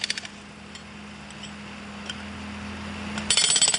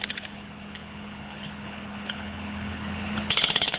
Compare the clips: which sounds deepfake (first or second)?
second